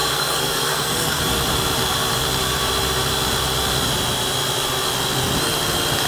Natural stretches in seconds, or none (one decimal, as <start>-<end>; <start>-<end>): 1.2-6.1